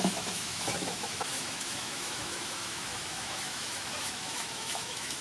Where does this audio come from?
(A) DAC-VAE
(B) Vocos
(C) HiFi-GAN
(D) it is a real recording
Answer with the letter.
A